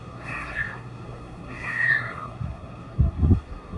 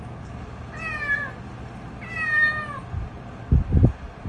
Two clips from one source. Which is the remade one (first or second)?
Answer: first